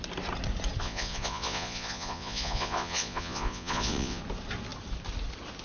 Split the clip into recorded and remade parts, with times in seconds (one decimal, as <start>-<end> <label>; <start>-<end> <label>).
0.0-0.8 recorded; 0.8-4.2 remade; 4.2-5.6 recorded